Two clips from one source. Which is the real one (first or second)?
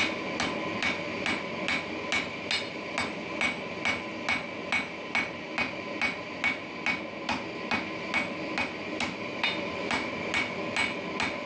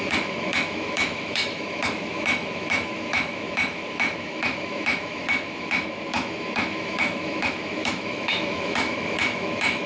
first